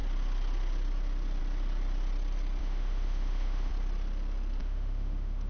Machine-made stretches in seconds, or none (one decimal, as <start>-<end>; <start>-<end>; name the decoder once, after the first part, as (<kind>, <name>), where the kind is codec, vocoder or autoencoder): 2.6-3.7 (autoencoder, DAC-VAE); 4.6-5.5